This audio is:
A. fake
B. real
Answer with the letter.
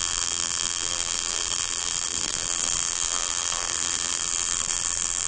A